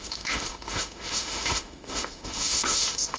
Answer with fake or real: fake